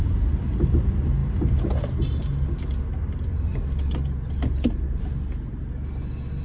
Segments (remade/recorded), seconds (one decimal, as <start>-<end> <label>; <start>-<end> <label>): 0.0-6.4 recorded